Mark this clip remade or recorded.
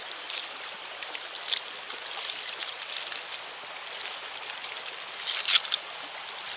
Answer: recorded